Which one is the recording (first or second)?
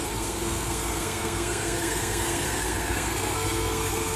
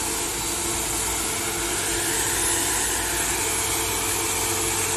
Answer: second